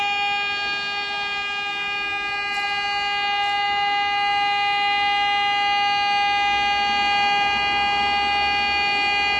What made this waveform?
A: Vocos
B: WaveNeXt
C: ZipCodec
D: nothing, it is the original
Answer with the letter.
D